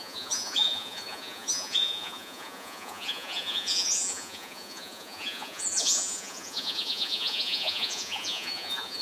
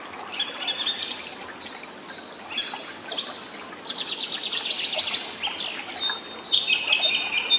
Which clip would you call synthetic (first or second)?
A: first